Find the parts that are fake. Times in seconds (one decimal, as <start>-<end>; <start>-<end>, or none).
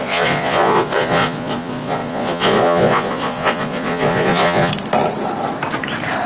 0.0-4.7